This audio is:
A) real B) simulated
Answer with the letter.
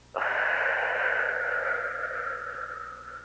A